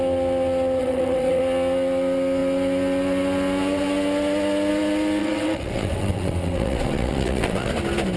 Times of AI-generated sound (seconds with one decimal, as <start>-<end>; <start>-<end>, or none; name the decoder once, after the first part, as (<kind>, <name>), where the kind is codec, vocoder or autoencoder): 0.8-1.4 (vocoder, WaveNeXt); 5.2-7.7